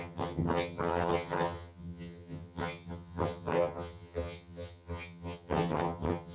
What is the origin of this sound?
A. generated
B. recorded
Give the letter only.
A